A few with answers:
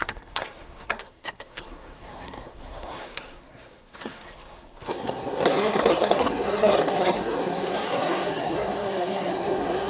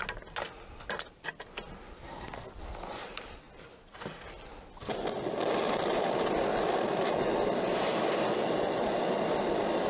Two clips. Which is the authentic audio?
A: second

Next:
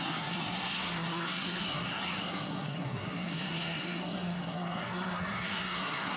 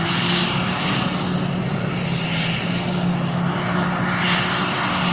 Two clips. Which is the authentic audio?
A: second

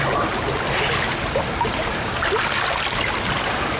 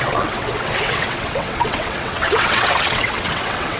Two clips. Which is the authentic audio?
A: first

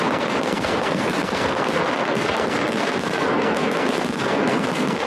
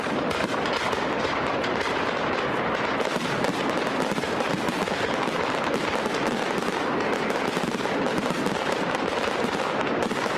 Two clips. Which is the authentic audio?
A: second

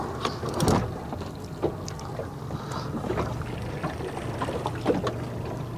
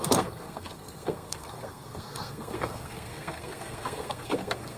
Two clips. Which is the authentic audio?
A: first